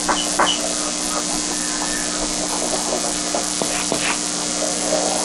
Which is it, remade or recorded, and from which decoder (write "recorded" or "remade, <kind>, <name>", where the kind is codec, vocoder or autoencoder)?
recorded